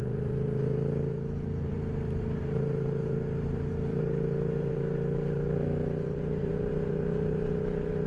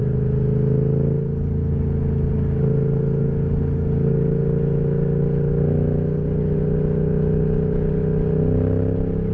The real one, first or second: second